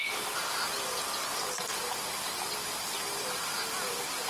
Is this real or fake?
real